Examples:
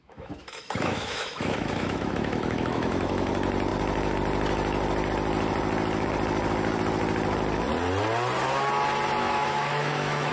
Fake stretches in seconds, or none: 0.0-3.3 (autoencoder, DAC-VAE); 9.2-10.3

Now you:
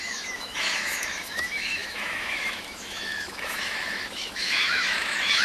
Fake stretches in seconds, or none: 0.0-5.4 (autoencoder, DAC-VAE)

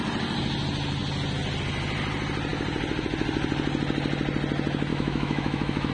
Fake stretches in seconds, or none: 4.9-5.9 (autoencoder, DAC-VAE)

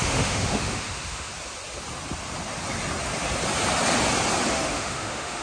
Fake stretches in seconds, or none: 0.0-1.3 (autoencoder, DAC-VAE); 4.5-5.4

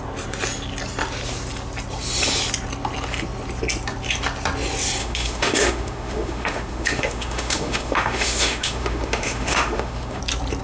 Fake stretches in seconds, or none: 5.0-10.2 (autoencoder, DAC-VAE)

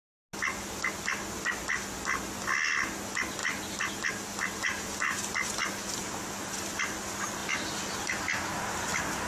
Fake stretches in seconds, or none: none